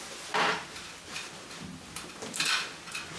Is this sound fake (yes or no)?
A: no